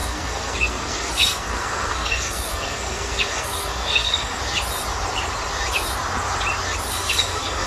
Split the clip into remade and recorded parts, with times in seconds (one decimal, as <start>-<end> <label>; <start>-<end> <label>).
0.0-4.4 remade; 4.4-6.9 recorded; 6.9-7.7 remade